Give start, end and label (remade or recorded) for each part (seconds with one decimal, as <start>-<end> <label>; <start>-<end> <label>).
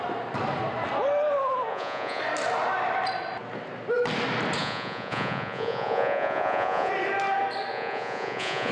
0.0-1.7 recorded; 1.7-2.2 remade; 2.2-4.6 recorded; 4.6-6.9 remade; 6.9-7.7 recorded; 7.7-8.7 remade